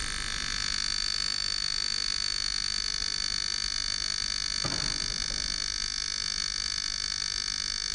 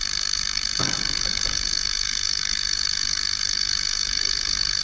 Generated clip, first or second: second